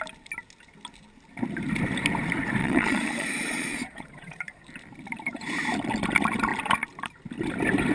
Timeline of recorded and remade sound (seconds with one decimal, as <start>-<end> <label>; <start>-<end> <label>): 0.0-2.6 recorded; 2.6-4.6 remade; 4.6-7.9 recorded